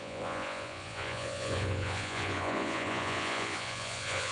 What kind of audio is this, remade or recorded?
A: remade